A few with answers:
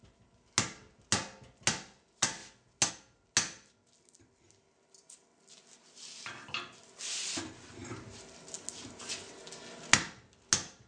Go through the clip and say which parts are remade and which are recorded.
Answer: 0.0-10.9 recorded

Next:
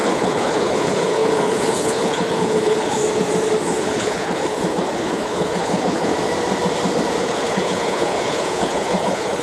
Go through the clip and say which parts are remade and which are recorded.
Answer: 0.0-3.0 remade; 3.0-3.6 recorded; 3.6-6.1 remade; 6.1-7.2 recorded; 7.2-9.4 remade

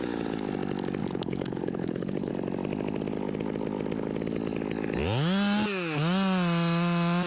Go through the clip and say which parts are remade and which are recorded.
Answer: 0.0-1.0 recorded; 1.0-2.3 remade; 2.3-7.3 recorded

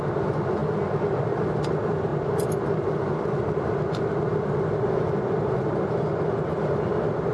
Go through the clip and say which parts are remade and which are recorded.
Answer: 0.0-7.3 recorded

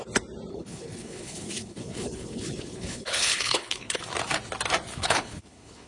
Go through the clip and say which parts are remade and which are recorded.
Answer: 0.0-0.5 recorded; 0.5-4.0 remade; 4.0-4.9 recorded; 4.9-5.9 remade

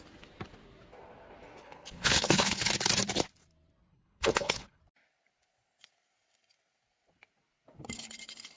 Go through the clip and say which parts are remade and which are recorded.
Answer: 0.0-1.6 recorded; 1.6-2.7 remade; 2.7-3.9 recorded; 3.9-4.8 remade; 4.8-8.6 recorded

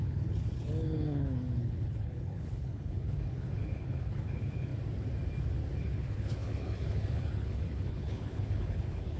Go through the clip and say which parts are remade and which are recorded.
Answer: 0.0-4.7 remade; 4.7-5.8 recorded; 5.8-9.2 remade